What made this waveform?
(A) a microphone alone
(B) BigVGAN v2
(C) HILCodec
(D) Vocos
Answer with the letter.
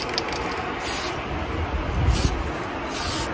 A